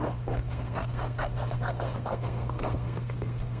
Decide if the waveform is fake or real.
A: fake